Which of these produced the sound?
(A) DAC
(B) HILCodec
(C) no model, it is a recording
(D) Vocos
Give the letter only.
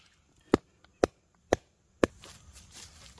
C